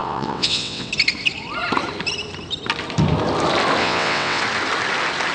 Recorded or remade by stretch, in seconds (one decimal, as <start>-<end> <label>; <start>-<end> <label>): 0.0-0.9 remade; 0.9-3.8 recorded; 3.8-4.4 remade; 4.4-5.3 recorded